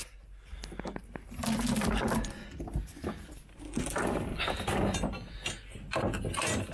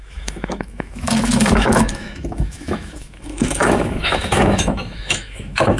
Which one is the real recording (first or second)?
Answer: first